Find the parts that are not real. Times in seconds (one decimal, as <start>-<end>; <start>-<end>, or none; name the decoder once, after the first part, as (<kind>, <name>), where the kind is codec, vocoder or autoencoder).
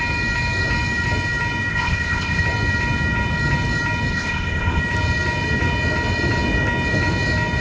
1.7-2.4 (codec, ZipCodec); 4.1-4.8